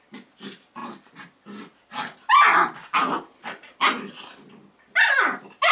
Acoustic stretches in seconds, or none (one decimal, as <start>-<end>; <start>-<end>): 0.0-0.8; 1.3-5.7